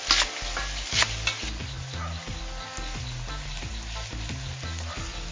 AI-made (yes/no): no